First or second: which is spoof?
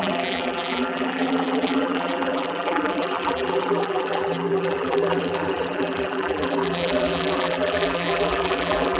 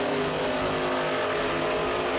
first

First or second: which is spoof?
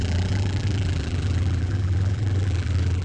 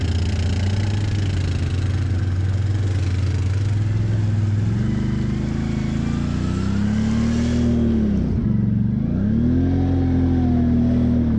first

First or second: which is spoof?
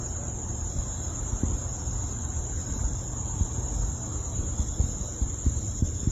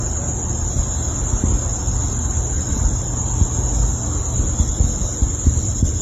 first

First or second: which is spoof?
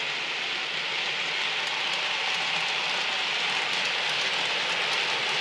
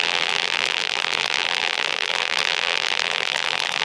second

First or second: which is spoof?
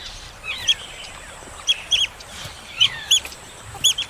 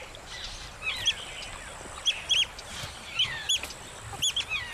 first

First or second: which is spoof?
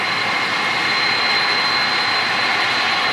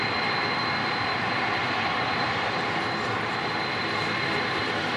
second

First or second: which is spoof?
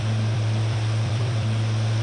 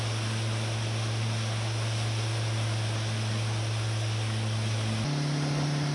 first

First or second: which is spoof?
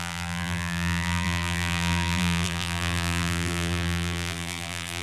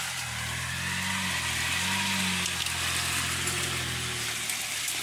first